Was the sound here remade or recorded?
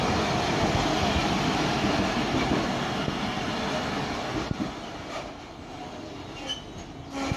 recorded